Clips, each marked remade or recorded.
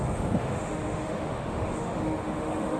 remade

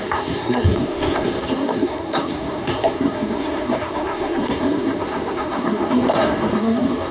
remade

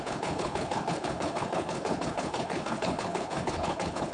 remade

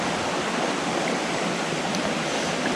recorded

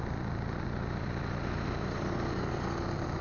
recorded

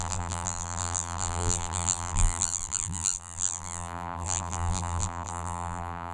remade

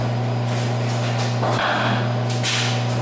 recorded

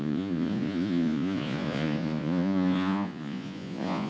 remade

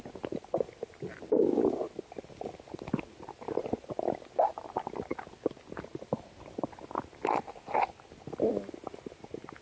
recorded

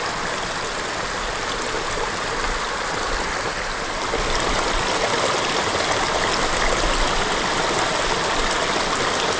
recorded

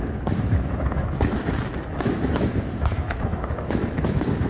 remade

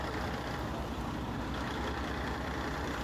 recorded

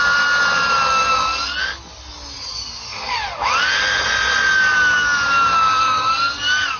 recorded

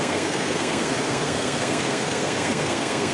remade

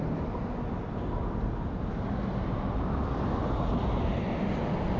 recorded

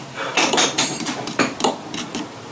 remade